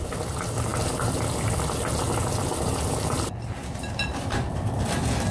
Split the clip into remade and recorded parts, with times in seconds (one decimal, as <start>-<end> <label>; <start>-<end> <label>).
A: 0.0-0.7 remade; 0.7-3.5 recorded; 3.5-5.3 remade